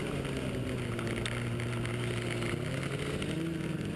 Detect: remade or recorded recorded